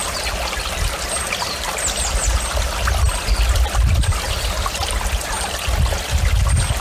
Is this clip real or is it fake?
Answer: real